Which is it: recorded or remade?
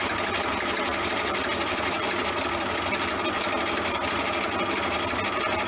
recorded